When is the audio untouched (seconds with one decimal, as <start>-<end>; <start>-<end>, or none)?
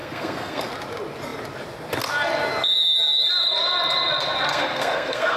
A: 0.7-4.5